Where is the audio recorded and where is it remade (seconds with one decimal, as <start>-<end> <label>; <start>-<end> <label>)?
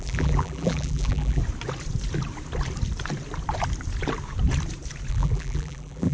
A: 0.0-1.4 remade; 1.4-5.1 recorded; 5.1-6.1 remade